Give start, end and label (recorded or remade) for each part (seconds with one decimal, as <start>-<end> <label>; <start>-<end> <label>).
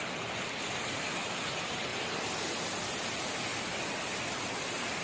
0.0-5.0 recorded